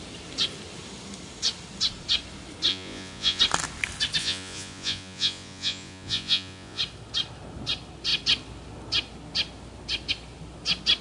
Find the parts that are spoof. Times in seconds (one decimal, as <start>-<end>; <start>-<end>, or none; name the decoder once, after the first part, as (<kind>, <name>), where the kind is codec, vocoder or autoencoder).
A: 2.7-3.4 (vocoder, Vocos); 4.2-6.8